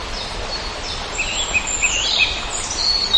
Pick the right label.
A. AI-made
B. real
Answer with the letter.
B